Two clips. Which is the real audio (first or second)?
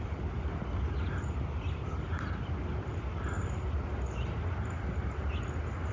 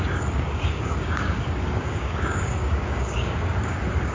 first